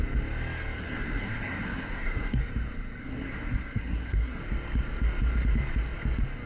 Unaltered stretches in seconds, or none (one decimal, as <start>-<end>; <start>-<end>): 0.0-0.8; 2.4-3.0; 4.4-6.5